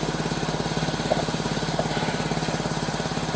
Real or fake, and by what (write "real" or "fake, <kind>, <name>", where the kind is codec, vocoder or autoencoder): real